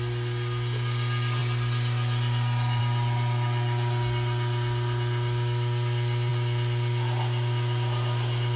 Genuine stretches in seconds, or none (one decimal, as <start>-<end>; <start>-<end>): 0.0-8.6